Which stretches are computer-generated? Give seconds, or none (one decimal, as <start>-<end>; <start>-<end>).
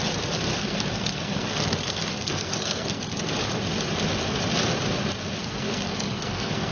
0.5-3.4; 5.4-6.7